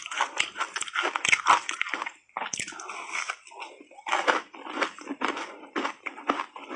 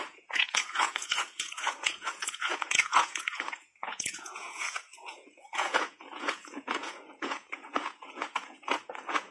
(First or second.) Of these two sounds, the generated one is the second